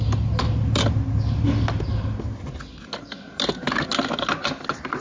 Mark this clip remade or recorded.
recorded